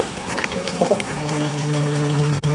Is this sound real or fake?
fake